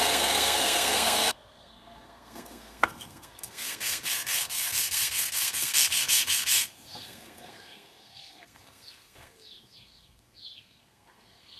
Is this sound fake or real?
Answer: fake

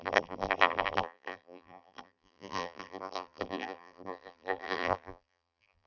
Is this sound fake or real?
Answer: fake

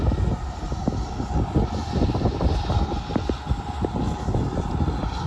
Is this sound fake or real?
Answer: real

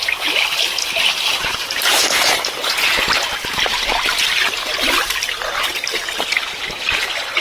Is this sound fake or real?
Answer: real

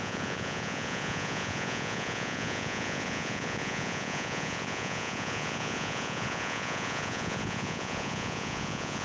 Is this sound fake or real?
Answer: fake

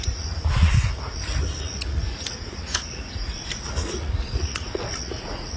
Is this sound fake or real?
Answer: fake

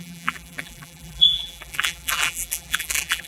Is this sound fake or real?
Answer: fake